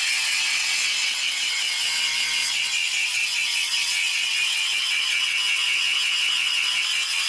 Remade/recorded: remade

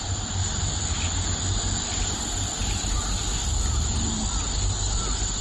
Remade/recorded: recorded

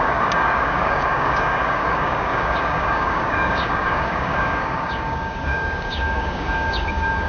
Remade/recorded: remade